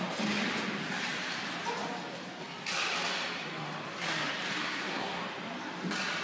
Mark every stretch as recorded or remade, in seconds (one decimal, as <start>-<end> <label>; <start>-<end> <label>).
0.0-4.6 recorded; 4.6-5.2 remade; 5.2-6.2 recorded